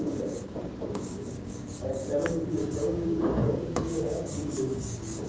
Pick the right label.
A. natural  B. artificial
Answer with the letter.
B